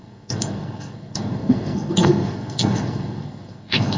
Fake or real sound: fake